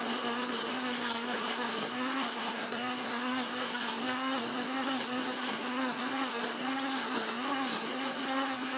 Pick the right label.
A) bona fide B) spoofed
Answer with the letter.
B